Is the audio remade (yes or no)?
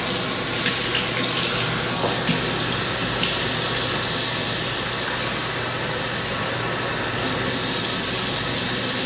no